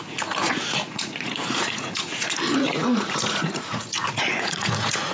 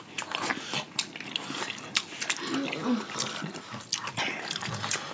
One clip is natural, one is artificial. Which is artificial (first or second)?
first